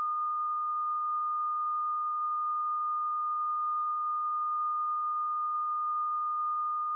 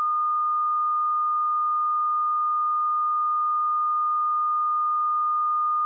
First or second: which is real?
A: second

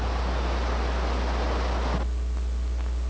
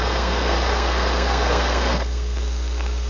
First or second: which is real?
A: first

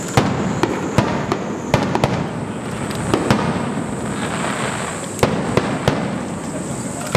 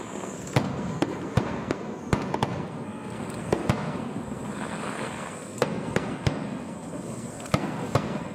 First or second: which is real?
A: first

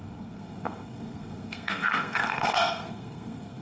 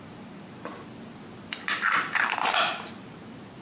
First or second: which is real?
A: second